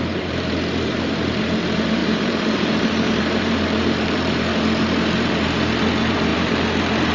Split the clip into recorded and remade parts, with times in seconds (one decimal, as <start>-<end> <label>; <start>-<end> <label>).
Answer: 0.0-4.5 remade; 4.5-5.0 recorded; 5.0-7.1 remade